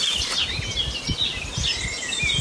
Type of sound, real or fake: real